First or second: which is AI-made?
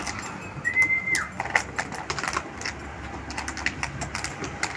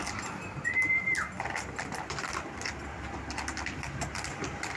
second